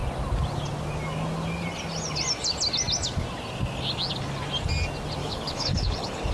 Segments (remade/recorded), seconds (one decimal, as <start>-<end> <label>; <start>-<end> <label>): 0.0-5.2 recorded; 5.2-6.3 remade